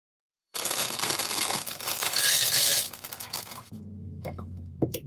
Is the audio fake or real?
fake